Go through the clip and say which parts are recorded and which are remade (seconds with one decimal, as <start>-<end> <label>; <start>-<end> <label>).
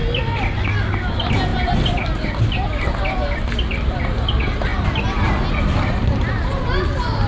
0.0-7.3 recorded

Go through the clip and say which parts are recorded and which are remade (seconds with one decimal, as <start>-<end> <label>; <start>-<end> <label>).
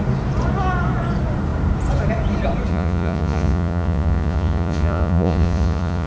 0.0-2.7 recorded; 2.7-6.1 remade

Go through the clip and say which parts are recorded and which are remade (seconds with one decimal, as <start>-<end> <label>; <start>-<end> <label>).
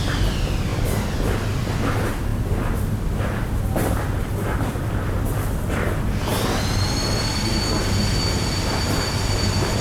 0.0-9.8 recorded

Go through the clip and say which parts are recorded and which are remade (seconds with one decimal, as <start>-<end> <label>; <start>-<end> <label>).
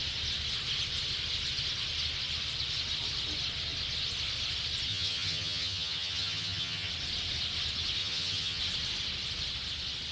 0.0-4.9 recorded; 4.9-6.9 remade; 6.9-8.0 recorded; 8.0-8.6 remade; 8.6-10.1 recorded